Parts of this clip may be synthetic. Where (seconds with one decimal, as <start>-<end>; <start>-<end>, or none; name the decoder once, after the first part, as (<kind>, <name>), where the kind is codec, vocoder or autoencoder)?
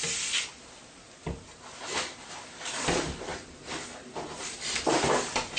none